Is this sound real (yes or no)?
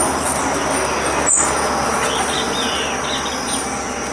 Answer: yes